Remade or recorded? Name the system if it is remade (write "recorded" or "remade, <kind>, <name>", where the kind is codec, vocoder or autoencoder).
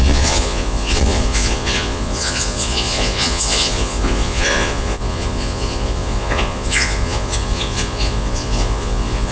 remade, vocoder, Vocos